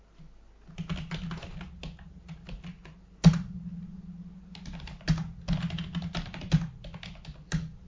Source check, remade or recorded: recorded